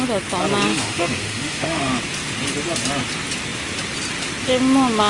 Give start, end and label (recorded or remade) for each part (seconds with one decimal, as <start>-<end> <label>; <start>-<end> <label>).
0.0-0.7 recorded; 0.7-1.9 remade; 1.9-5.1 recorded